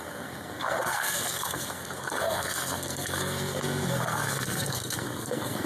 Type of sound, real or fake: fake